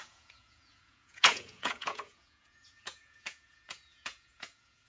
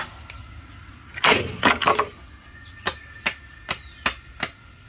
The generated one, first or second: first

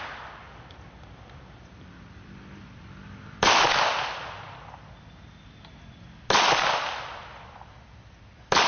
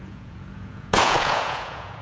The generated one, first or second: second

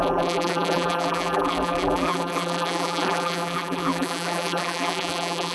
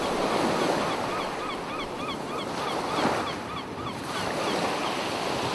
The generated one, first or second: first